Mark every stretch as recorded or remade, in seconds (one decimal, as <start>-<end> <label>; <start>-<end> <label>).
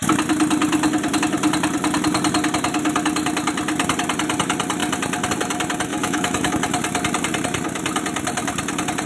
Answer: 0.0-5.9 recorded; 5.9-6.5 remade; 6.5-9.1 recorded